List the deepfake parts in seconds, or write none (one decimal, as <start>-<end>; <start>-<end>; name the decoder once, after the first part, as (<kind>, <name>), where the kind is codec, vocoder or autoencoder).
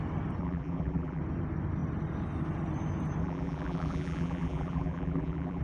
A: 0.4-1.2 (vocoder, BigVGAN v2); 3.2-5.6